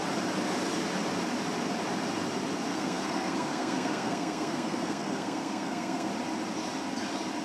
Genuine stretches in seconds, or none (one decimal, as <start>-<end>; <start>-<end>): 0.0-2.7; 6.1-7.4